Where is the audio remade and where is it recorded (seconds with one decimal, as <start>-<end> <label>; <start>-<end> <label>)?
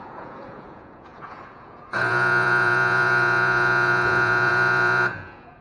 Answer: 0.0-5.6 remade